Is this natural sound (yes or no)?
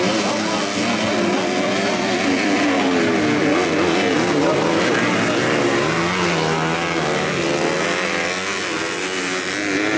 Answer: yes